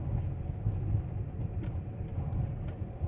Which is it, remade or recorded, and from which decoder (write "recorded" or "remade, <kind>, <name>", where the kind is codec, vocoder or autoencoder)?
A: recorded